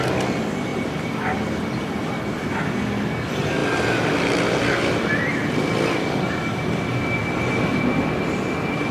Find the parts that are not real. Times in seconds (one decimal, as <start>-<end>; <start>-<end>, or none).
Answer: 0.7-2.6